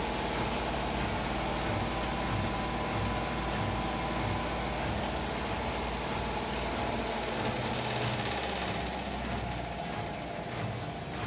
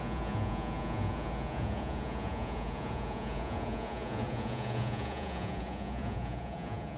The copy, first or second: second